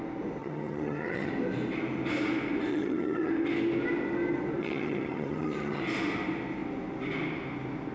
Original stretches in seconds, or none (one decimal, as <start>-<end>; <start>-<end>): 0.0-0.4; 1.3-2.7; 3.3-4.6; 5.8-7.9